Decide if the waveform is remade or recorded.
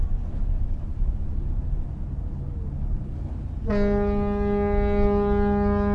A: recorded